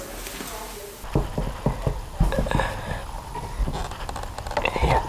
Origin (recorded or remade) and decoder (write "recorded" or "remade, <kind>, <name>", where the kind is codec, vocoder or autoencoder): recorded